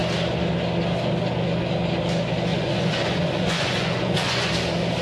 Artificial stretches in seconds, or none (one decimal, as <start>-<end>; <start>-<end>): 2.5-4.5

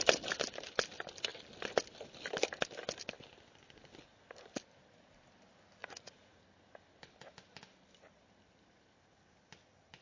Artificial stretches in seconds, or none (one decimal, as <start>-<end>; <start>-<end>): 5.8-6.4